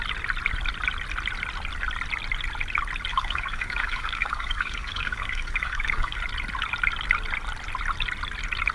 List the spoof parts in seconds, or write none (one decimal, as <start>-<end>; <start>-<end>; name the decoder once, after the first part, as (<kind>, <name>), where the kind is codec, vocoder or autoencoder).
3.1-6.2 (codec, DAC)